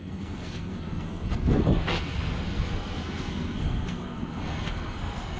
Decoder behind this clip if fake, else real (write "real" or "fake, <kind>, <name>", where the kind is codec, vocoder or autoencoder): fake, codec, SNAC